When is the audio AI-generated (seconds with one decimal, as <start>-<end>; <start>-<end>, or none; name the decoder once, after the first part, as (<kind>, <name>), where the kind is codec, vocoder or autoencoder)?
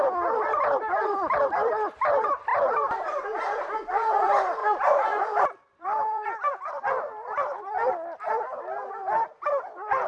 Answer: 4.6-7.6 (vocoder, BigVGAN v2)